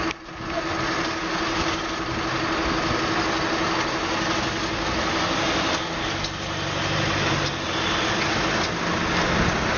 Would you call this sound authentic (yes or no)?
yes